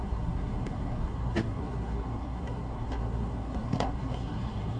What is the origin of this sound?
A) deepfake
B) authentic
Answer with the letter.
A